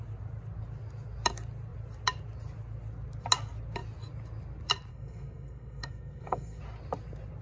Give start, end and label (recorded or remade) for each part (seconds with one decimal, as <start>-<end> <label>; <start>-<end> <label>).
0.0-4.9 recorded; 4.9-6.6 remade; 6.6-7.4 recorded